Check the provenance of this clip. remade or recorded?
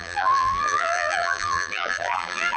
remade